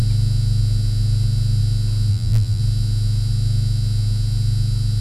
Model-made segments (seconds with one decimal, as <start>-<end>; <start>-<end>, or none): 2.1-2.6